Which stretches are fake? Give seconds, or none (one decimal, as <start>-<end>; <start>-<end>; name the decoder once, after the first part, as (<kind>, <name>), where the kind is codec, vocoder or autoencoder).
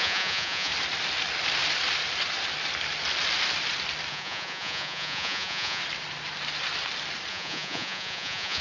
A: 0.0-0.7 (vocoder, Vocos); 4.1-5.8; 7.3-8.6